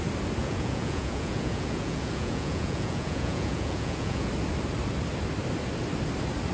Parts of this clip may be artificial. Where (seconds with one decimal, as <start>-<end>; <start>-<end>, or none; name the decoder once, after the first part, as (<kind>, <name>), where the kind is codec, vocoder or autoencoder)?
0.4-4.3 (vocoder, Vocos)